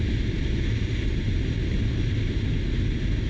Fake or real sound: real